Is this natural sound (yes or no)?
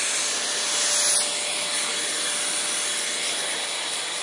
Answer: yes